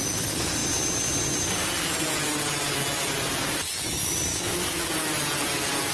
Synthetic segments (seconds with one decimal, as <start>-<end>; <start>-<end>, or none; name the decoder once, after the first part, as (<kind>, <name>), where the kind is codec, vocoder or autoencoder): 4.3-4.9 (codec, DAC)